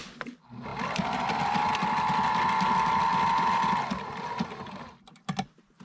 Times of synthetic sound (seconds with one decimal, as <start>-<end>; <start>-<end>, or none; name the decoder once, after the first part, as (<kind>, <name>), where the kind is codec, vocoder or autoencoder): none